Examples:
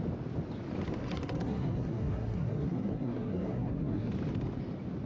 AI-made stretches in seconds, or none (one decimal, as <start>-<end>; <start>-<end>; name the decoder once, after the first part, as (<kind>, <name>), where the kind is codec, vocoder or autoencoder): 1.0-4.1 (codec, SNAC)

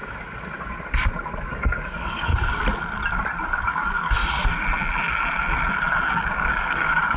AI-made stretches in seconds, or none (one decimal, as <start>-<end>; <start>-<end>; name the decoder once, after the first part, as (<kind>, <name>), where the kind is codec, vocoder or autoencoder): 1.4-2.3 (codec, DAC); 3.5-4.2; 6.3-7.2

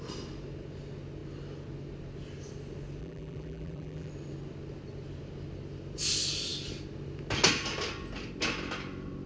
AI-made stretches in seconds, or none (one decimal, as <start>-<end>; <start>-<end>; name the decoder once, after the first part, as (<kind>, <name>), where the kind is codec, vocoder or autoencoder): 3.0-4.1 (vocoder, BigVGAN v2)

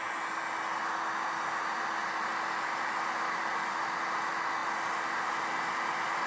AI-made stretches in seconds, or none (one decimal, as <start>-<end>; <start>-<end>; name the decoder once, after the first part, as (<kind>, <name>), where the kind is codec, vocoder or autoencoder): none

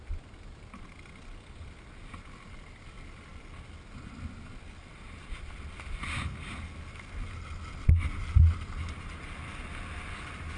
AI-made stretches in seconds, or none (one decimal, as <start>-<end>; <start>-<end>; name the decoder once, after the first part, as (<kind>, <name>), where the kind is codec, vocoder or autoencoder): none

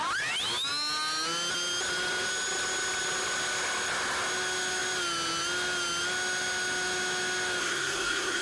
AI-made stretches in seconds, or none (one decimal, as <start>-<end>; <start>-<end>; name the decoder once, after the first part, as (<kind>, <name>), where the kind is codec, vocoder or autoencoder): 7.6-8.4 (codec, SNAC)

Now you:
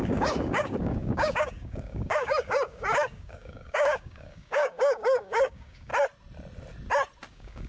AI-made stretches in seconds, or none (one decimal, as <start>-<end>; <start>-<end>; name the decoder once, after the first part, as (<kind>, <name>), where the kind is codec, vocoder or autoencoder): 0.0-5.9 (codec, DAC); 7.3-7.7

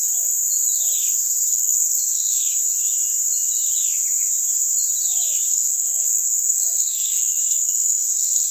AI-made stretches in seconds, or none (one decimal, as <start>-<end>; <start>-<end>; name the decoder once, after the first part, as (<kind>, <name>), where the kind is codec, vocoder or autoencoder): 1.5-2.4 (codec, SNAC); 5.5-8.5